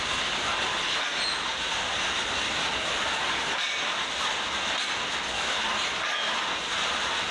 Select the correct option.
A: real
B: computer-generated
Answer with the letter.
A